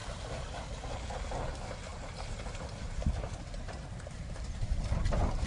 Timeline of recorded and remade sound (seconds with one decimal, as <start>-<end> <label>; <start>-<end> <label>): 0.0-0.5 remade; 0.5-1.9 recorded; 1.9-5.0 remade; 5.0-5.5 recorded